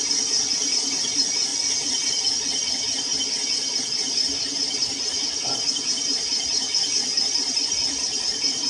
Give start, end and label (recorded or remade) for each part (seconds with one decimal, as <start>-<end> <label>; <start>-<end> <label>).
0.0-8.7 recorded